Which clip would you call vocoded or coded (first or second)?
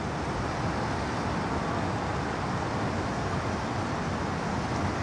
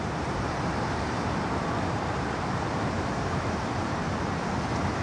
second